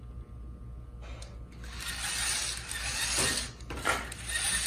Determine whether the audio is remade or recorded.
recorded